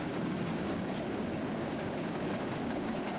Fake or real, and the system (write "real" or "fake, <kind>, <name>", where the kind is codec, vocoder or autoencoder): fake, codec, DAC